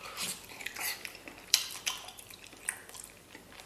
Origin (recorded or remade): remade